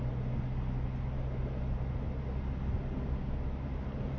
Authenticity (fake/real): real